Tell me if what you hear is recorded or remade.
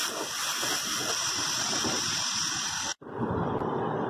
recorded